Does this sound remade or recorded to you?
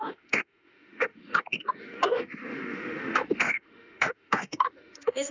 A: remade